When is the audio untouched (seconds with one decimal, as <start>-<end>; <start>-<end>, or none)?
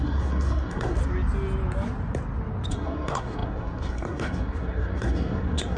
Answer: 1.0-2.7